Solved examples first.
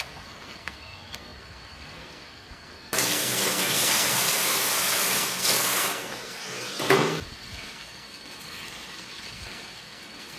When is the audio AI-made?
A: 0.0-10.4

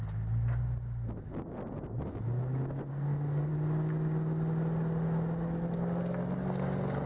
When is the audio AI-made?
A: 2.9-3.5

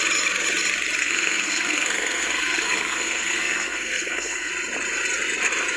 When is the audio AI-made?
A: 1.0-4.5

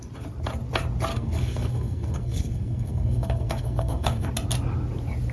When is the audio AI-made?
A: 1.1-4.3

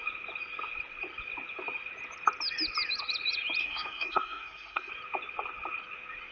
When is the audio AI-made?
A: 3.6-4.9

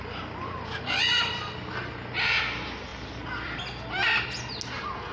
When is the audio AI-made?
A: none